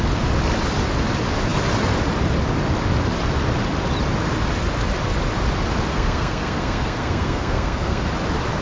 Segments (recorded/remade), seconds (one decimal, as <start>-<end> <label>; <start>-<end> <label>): 0.0-5.9 recorded; 5.9-8.1 remade; 8.1-8.6 recorded